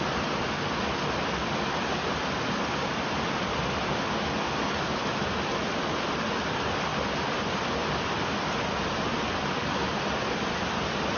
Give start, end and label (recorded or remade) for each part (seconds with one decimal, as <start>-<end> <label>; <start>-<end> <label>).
0.0-11.2 recorded